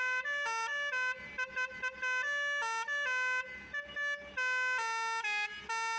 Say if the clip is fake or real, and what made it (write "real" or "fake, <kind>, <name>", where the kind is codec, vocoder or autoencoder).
real